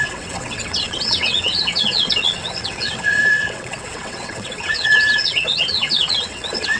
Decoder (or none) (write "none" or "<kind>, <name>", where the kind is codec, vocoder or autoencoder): vocoder, WaveNeXt